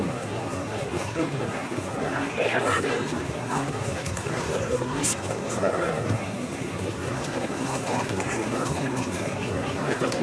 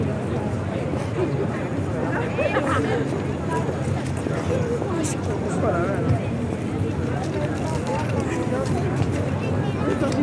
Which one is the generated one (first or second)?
first